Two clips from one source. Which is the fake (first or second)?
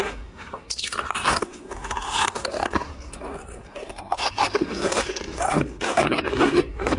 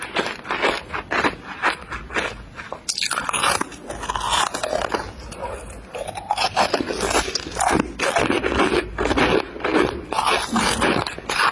first